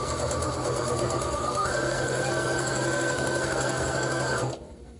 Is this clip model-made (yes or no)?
yes